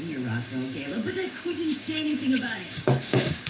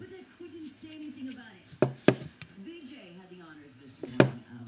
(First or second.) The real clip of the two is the second